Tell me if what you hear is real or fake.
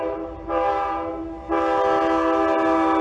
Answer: real